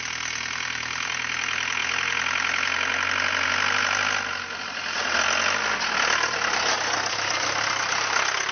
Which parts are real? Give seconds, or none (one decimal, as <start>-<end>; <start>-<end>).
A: 0.0-8.5